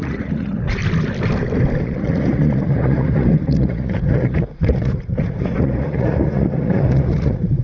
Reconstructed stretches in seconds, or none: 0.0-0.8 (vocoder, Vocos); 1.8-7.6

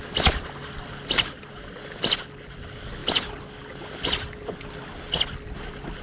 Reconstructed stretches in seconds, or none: none

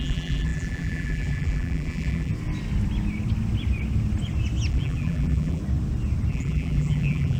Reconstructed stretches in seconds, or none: 0.0-2.3 (vocoder, BigVGAN v2); 4.7-5.6; 6.3-7.4

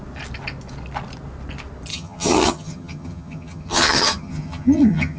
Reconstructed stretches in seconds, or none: 1.9-5.2 (vocoder, HiFi-GAN)

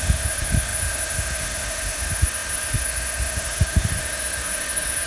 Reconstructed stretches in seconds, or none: 0.0-5.1 (autoencoder, DAC-VAE)